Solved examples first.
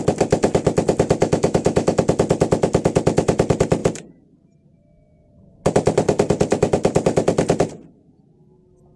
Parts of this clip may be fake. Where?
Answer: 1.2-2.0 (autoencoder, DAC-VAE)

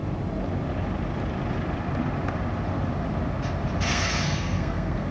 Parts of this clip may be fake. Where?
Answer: 3.9-5.1 (codec, SNAC)

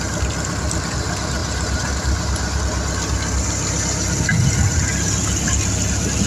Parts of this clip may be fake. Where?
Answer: 1.4-2.6 (vocoder, BigVGAN v2)

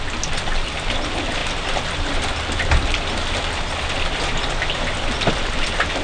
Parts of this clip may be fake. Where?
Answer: none

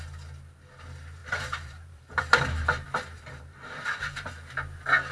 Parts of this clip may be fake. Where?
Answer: 1.2-4.3 (vocoder, BigVGAN v2)